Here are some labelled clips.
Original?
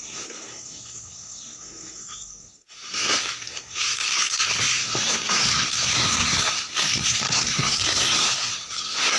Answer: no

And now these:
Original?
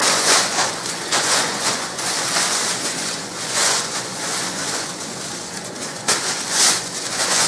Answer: no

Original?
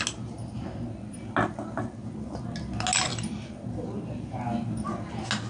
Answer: yes